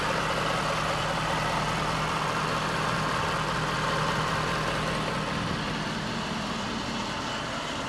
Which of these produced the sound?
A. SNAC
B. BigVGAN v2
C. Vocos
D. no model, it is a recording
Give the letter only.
D